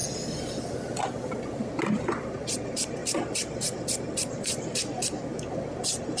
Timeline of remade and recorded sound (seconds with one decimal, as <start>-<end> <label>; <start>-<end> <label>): 0.0-2.5 recorded; 2.5-5.3 remade; 5.3-6.2 recorded